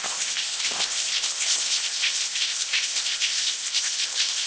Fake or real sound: fake